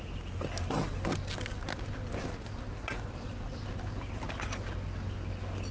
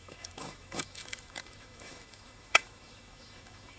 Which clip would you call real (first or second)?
first